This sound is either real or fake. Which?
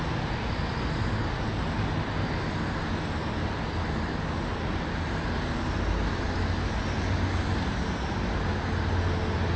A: real